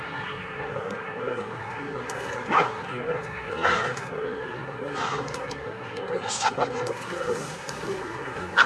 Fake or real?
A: fake